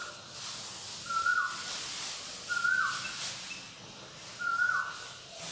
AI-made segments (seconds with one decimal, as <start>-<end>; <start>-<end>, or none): none